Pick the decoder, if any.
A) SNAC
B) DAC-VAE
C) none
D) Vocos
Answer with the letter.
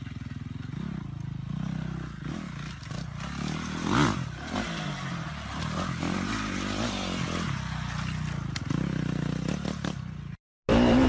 C